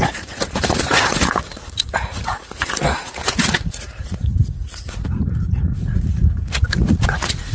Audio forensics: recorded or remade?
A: remade